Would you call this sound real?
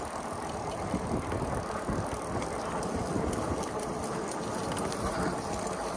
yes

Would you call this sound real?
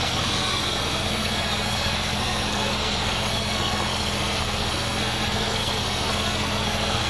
no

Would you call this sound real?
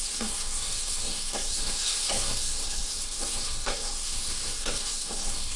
no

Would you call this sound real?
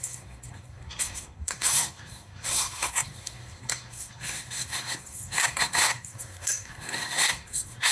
no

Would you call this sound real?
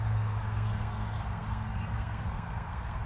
no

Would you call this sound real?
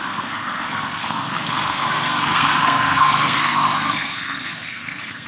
no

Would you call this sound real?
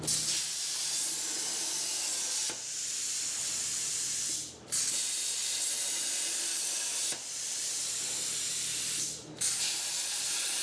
yes